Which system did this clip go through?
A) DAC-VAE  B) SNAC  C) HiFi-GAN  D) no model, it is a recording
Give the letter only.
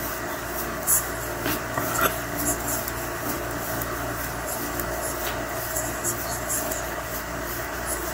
D